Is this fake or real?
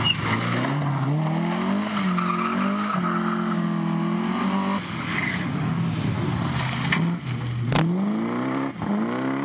real